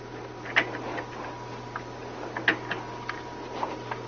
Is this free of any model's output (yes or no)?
yes